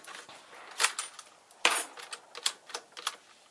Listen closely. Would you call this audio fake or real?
real